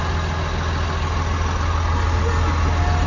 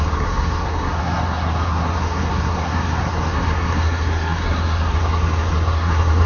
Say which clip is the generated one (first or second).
second